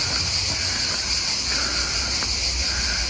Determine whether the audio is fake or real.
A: real